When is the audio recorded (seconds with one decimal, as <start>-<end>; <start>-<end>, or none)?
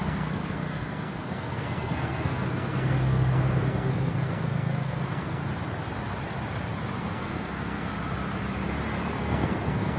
5.4-7.0; 7.9-9.2